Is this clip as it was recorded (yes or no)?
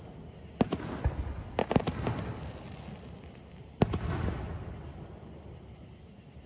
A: yes